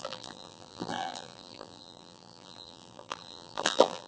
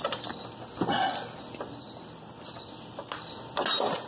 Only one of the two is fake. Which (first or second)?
first